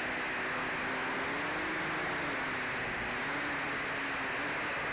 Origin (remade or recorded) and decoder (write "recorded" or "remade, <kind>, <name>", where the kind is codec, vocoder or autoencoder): recorded